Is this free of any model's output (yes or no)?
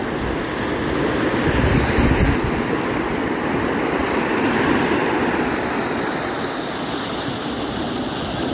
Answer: yes